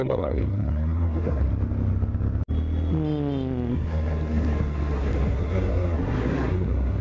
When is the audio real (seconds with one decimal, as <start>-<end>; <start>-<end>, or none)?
1.5-3.7